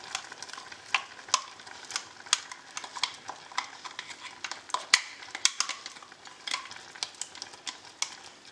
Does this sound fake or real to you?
real